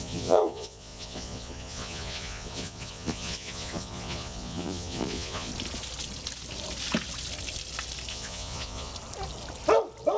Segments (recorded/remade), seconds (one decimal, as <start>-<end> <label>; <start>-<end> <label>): 0.0-5.5 remade; 5.5-8.1 recorded; 8.1-8.9 remade; 8.9-10.2 recorded